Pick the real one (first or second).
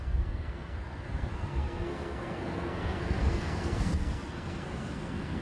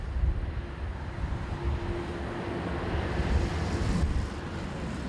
second